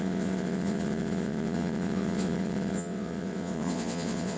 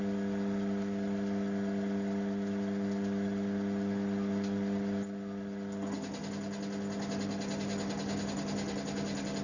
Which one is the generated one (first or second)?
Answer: first